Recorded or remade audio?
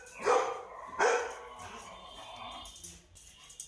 recorded